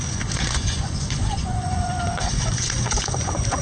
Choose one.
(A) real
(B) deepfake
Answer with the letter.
B